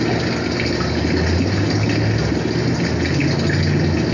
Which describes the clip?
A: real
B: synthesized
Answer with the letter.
A